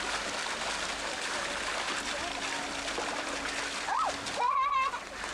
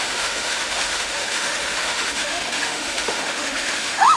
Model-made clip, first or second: second